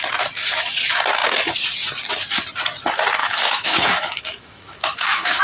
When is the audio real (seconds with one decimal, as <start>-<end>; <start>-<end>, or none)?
0.0-3.2